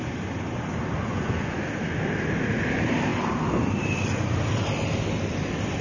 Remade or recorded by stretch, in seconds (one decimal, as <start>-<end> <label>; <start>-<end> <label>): 0.0-1.1 recorded; 1.1-1.6 remade; 1.6-5.8 recorded